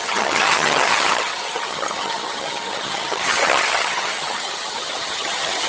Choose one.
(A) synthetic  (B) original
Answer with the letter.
A